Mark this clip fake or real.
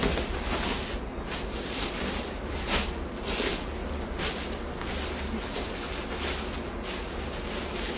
real